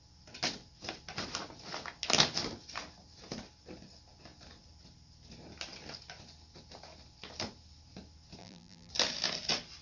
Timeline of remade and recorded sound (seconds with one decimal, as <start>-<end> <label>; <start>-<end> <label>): 0.0-8.4 recorded; 8.4-8.9 remade; 8.9-9.8 recorded